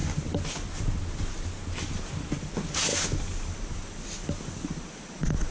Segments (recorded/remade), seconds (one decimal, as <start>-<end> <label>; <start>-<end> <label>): 0.0-5.5 recorded